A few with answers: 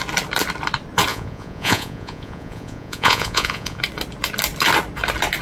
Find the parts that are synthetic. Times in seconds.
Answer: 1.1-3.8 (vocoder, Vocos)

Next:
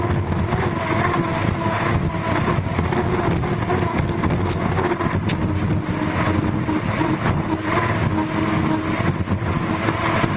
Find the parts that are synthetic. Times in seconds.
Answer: 6.4-8.0 (vocoder, BigVGAN v2)

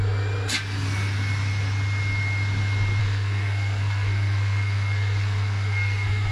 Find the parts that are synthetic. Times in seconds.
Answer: 3.0-6.3 (codec, SNAC)

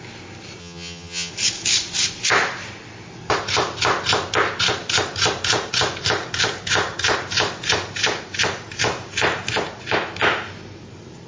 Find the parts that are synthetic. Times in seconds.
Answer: 0.6-1.3 (vocoder, HiFi-GAN)